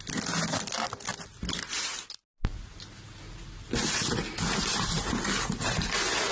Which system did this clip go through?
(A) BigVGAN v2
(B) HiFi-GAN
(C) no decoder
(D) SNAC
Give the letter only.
C